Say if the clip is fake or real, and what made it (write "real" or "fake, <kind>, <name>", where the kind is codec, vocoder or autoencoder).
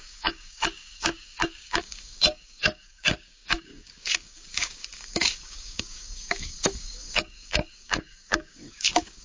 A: fake, codec, DAC